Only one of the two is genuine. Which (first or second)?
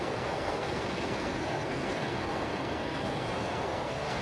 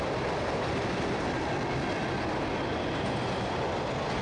second